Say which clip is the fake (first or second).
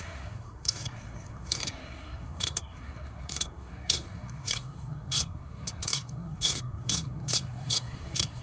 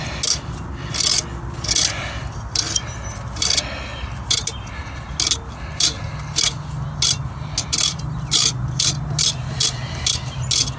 first